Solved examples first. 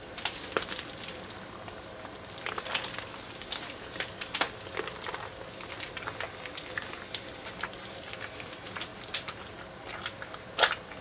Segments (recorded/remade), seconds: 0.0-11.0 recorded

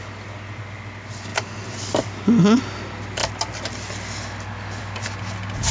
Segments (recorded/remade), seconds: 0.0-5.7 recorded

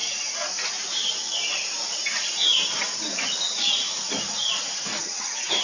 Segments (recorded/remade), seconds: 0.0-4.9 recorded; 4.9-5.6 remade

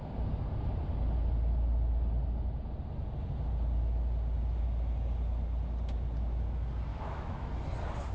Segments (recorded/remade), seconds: 0.0-6.9 recorded; 6.9-7.5 remade; 7.5-8.1 recorded

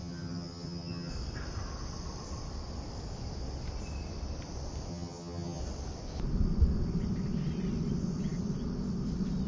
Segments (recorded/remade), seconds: 0.0-1.1 remade; 1.1-4.9 recorded; 4.9-5.6 remade; 5.6-9.5 recorded

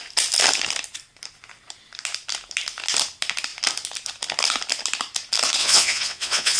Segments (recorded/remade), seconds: 0.0-5.6 recorded; 5.6-6.6 remade